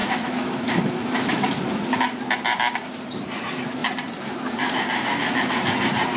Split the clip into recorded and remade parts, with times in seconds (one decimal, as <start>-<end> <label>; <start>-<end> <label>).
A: 0.0-1.6 remade; 1.6-6.2 recorded

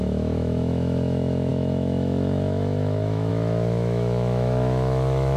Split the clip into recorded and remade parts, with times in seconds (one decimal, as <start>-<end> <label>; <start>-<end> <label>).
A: 0.0-5.4 remade

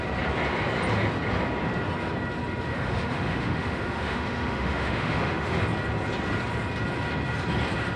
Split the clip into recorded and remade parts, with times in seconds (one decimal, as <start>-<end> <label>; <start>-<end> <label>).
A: 0.0-2.7 recorded; 2.7-5.6 remade; 5.6-8.0 recorded

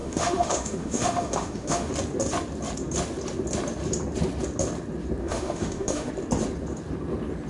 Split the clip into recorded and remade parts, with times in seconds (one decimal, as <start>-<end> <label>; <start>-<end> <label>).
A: 0.0-1.9 remade; 1.9-5.2 recorded; 5.2-6.1 remade; 6.1-7.5 recorded

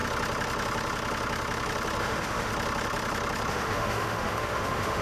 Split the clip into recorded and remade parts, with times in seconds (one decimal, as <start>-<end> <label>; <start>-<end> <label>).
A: 0.0-2.0 recorded; 2.0-2.5 remade; 2.5-3.5 recorded; 3.5-5.0 remade

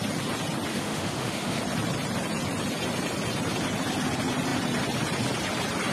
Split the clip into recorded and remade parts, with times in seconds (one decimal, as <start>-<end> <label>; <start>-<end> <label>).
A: 0.0-0.7 recorded; 0.7-1.6 remade; 1.6-5.9 recorded

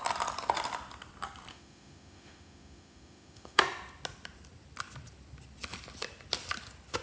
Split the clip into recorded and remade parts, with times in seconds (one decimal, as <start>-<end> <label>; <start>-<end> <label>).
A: 0.0-1.5 recorded; 1.5-3.6 remade; 3.6-7.0 recorded